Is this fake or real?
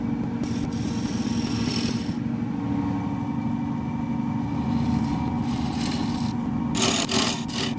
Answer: real